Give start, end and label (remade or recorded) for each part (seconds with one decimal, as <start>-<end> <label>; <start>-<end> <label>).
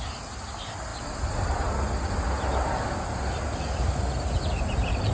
0.0-5.1 recorded